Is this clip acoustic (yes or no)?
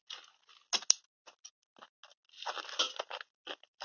yes